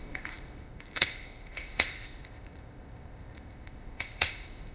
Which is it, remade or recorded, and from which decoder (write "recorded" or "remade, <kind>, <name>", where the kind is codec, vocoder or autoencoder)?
remade, codec, ZipCodec